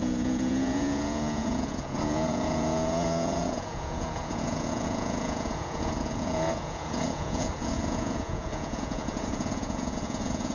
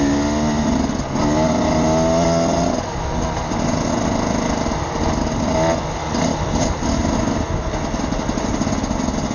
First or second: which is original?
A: second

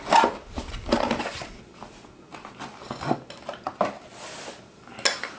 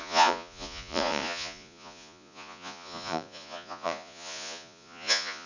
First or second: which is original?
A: first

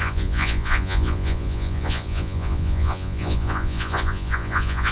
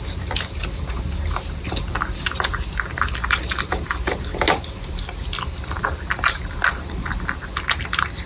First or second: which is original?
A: second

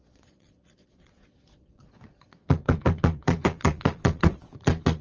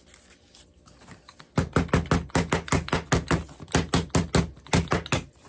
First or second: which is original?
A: second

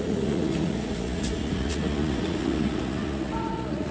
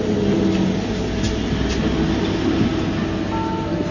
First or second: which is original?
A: second